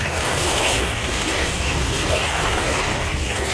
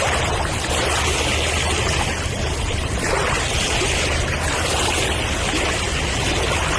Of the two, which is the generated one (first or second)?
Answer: first